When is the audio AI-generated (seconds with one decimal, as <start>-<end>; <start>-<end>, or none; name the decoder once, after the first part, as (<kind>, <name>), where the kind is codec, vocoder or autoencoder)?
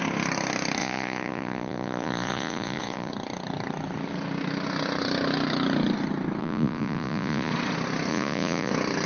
0.8-3.1 (vocoder, Vocos); 6.4-7.5; 8.1-8.7